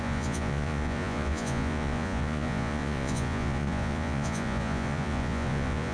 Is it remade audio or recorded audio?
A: remade